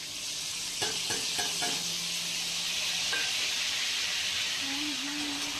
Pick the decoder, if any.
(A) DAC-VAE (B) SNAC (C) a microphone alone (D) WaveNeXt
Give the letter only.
C